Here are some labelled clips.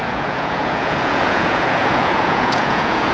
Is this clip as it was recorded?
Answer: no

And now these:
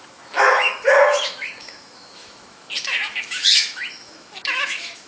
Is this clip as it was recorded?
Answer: no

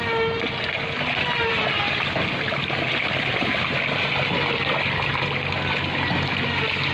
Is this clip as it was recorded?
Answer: yes